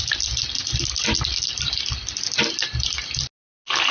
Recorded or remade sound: recorded